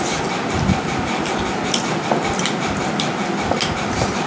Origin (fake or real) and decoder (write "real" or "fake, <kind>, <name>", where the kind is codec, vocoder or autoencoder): real